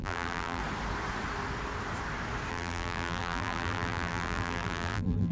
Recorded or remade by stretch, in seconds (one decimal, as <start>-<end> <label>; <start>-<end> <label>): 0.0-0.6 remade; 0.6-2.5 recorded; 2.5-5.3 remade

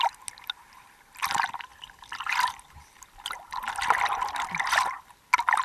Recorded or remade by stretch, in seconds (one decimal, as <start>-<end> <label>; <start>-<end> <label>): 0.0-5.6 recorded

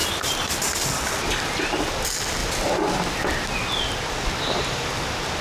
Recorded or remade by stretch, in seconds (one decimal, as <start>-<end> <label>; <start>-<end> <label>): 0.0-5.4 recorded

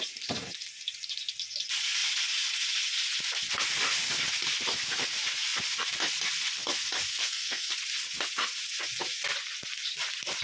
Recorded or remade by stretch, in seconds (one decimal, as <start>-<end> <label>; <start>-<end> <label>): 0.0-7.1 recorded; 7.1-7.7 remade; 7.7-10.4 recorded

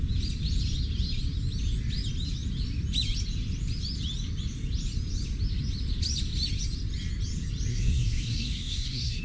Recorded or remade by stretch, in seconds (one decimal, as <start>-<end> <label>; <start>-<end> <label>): 0.0-7.7 recorded; 7.7-9.2 remade

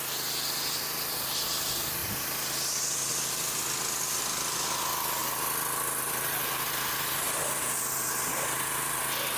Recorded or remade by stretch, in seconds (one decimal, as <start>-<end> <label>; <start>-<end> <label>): 0.0-9.4 recorded